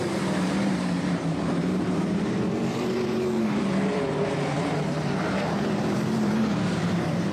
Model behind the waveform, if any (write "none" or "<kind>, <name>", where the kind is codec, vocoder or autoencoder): vocoder, BigVGAN v2